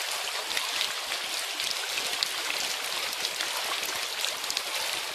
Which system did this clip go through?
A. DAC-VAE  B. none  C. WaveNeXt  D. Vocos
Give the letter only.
B